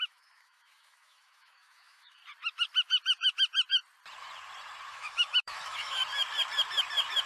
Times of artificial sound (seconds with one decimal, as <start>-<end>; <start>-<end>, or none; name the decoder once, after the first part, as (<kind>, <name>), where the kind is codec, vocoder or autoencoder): 0.0-2.2 (autoencoder, DAC-VAE); 4.9-6.0